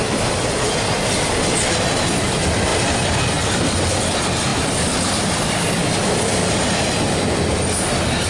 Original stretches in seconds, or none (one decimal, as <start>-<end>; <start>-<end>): 0.0-8.3